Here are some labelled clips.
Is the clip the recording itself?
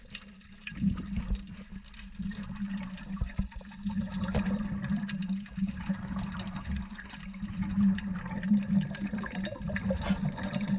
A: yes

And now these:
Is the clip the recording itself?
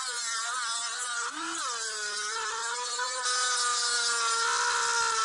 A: yes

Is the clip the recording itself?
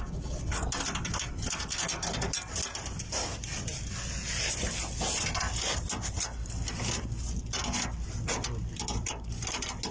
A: yes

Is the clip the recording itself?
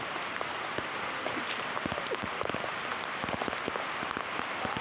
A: yes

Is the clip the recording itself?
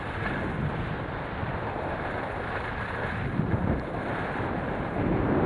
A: yes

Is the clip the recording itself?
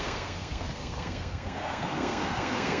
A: no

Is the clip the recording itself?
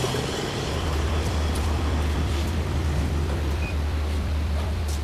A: no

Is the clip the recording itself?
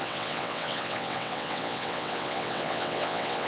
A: no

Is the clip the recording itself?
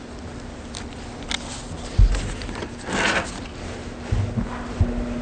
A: yes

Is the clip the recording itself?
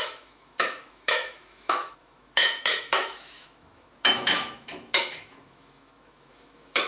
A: no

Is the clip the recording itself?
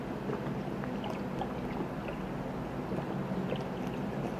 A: yes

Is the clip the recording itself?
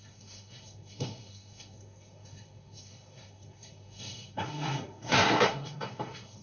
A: no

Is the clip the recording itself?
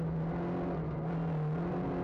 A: yes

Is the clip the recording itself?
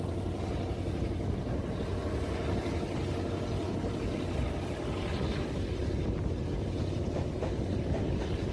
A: yes